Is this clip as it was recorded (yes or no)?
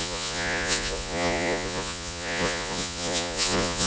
no